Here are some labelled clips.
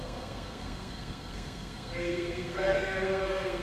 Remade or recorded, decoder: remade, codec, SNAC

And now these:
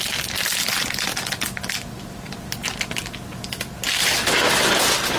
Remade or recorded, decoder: recorded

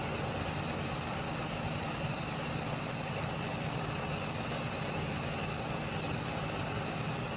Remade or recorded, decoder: recorded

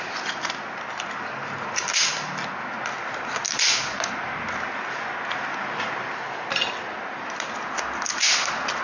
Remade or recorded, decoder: recorded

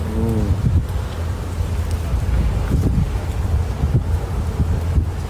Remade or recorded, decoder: recorded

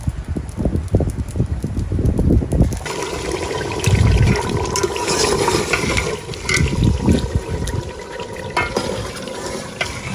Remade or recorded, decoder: recorded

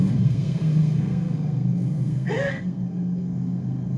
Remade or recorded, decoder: remade, codec, SNAC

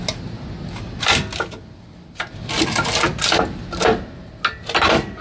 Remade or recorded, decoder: recorded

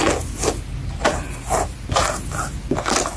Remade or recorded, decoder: recorded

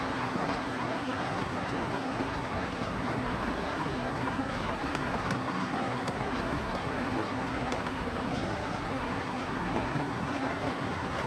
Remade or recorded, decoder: remade, codec, SNAC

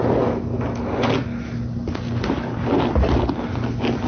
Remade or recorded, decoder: recorded